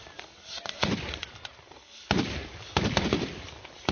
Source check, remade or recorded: recorded